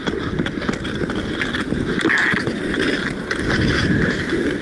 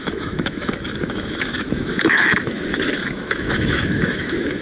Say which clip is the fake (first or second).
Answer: second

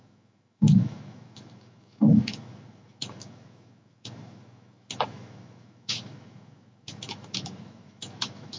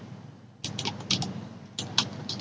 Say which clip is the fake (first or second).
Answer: first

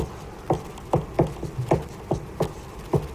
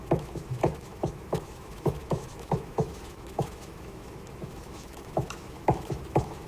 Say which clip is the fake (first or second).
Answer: second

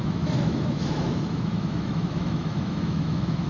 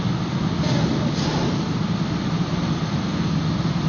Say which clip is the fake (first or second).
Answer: first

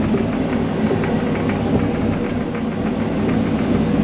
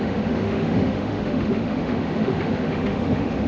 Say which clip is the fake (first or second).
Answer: second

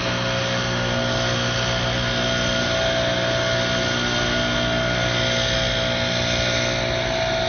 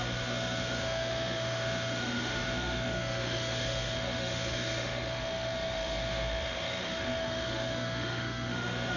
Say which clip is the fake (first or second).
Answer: second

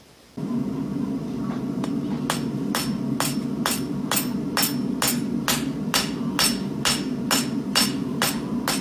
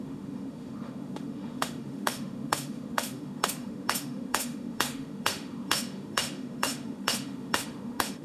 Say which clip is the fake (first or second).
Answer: second